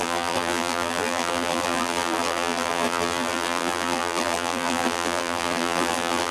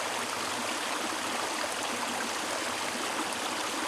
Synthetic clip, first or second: first